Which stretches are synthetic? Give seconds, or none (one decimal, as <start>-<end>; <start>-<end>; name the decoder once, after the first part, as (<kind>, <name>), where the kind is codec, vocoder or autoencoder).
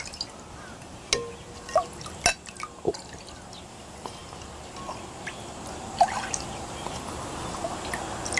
none